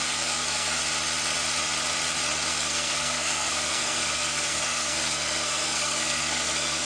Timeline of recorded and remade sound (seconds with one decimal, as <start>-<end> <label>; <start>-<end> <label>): 0.0-0.8 remade; 0.8-2.5 recorded; 2.5-6.8 remade